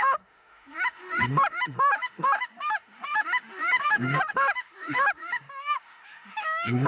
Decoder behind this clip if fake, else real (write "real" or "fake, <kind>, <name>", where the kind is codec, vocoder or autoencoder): fake, autoencoder, DAC-VAE